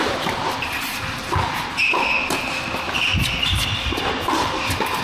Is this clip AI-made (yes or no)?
no